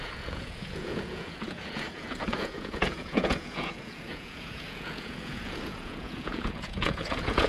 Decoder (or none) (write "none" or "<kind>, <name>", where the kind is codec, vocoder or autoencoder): vocoder, Vocos